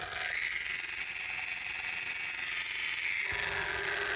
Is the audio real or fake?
real